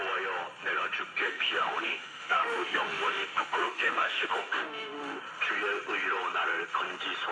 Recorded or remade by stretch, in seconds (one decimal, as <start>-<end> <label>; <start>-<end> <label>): 0.0-1.2 recorded; 1.2-5.2 remade; 5.2-7.3 recorded